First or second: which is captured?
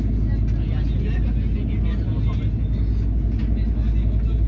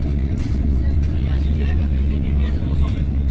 first